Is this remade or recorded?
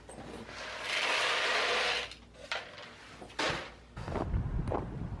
recorded